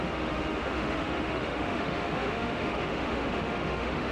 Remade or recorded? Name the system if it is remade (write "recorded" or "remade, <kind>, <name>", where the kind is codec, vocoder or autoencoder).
remade, autoencoder, DAC-VAE